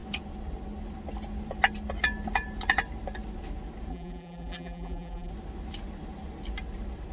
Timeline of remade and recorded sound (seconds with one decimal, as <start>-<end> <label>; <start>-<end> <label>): 0.0-3.9 recorded; 3.9-5.3 remade; 5.3-7.1 recorded